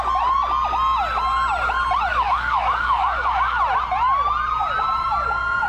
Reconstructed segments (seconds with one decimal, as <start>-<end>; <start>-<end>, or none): 2.1-3.6